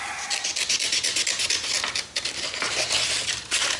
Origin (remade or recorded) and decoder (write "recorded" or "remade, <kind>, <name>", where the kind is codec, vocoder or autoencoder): recorded